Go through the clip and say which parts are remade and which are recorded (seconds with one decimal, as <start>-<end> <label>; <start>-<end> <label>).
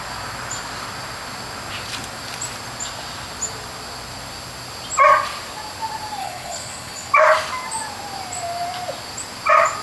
0.0-6.2 recorded; 6.2-7.1 remade; 7.1-9.8 recorded